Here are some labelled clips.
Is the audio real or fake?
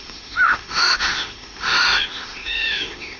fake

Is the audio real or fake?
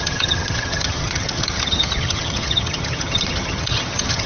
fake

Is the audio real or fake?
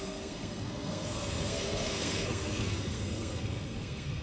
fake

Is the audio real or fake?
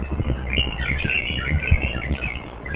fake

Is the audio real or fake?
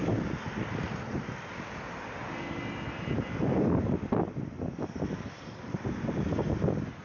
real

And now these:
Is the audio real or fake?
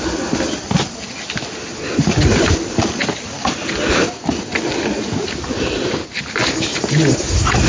real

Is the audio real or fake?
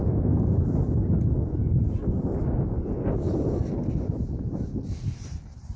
real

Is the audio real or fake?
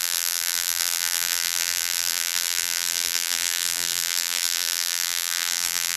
fake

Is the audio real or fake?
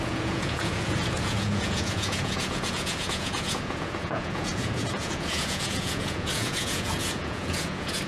fake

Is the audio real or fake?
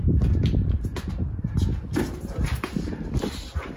real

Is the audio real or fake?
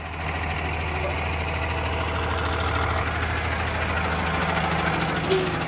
real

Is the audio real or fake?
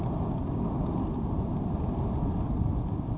real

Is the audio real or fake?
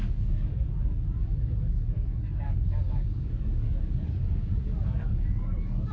fake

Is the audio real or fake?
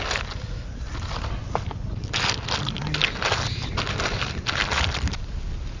real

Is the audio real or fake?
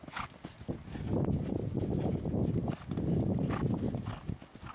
real